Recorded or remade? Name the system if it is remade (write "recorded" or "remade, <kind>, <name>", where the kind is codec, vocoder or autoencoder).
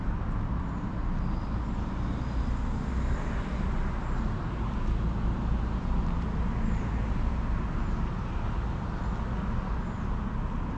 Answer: recorded